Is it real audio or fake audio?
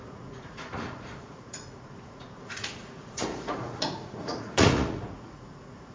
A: fake